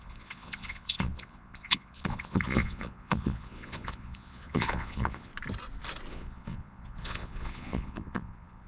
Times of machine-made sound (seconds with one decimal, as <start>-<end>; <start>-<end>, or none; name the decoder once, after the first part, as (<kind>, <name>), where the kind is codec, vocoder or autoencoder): 0.0-5.3 (vocoder, Vocos); 6.1-8.7